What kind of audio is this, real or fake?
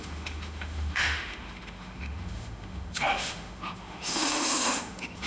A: fake